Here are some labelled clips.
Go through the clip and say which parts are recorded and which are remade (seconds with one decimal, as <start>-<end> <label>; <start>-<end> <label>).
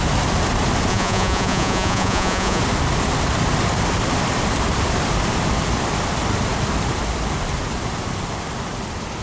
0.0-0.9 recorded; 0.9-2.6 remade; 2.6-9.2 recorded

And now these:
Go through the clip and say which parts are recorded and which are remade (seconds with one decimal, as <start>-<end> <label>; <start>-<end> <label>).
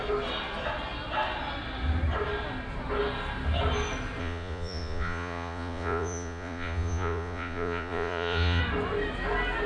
0.0-4.2 recorded; 4.2-8.6 remade; 8.6-9.7 recorded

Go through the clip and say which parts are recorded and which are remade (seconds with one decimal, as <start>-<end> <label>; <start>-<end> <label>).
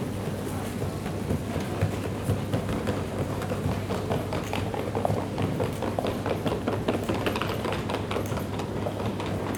0.0-9.6 recorded